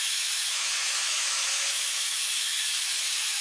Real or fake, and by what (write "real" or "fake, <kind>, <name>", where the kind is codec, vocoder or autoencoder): fake, autoencoder, DAC-VAE